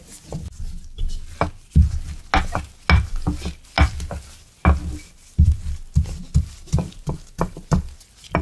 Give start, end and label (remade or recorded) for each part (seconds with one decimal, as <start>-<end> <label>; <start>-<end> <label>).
0.0-8.4 recorded